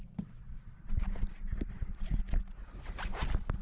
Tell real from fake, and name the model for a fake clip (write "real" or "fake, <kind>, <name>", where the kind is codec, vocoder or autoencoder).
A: real